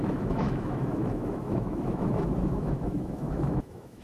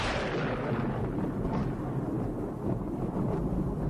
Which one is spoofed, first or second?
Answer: first